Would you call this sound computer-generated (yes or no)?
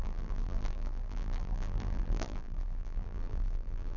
yes